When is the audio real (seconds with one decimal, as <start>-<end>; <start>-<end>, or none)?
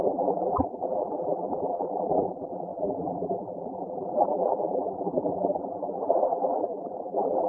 none